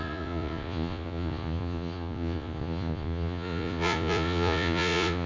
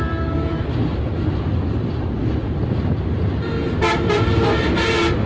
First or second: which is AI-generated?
first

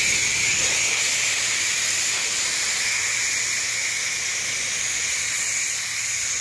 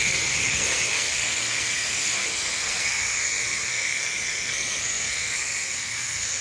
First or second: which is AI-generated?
second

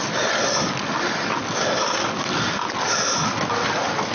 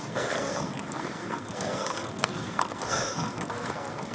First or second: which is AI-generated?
second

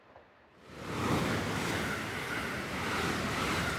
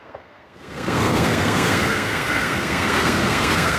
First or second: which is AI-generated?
second